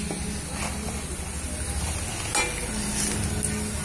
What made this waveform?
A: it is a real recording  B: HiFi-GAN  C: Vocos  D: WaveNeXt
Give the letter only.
A